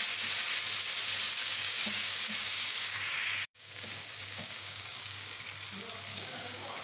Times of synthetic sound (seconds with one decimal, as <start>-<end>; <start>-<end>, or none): 1.4-5.4; 6.1-6.8